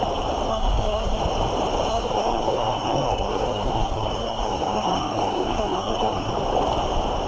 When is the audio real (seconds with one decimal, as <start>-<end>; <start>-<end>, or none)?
0.0-0.5; 1.2-1.9; 6.3-7.3